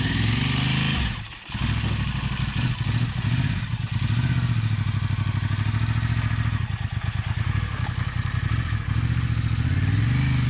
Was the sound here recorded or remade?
recorded